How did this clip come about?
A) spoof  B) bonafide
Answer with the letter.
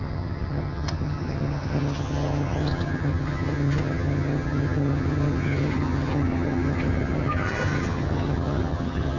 A